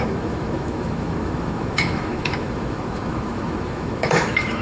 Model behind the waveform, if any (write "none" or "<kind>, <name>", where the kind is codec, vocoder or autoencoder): autoencoder, DAC-VAE